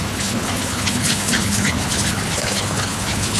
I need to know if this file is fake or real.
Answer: fake